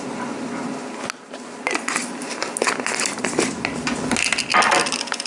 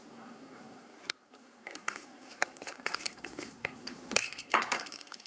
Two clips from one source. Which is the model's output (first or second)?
second